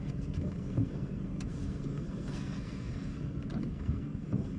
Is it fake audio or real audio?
fake